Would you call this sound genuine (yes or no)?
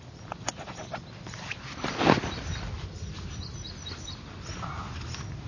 yes